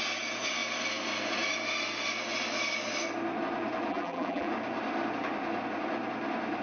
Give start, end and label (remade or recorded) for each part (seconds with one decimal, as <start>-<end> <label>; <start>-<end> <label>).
0.0-3.9 recorded; 3.9-4.5 remade; 4.5-6.6 recorded

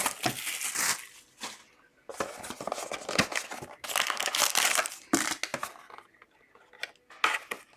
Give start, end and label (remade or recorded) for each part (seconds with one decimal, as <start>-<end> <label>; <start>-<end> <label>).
0.0-5.5 recorded; 5.5-6.5 remade; 6.5-7.8 recorded